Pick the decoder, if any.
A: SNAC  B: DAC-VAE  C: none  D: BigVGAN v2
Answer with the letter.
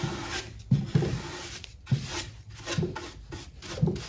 C